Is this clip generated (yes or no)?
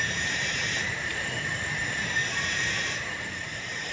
yes